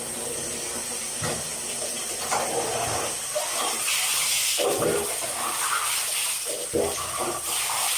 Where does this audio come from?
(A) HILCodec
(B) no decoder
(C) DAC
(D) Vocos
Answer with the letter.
B